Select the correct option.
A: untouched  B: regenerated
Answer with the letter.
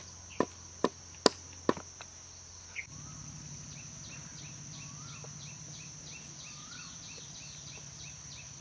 A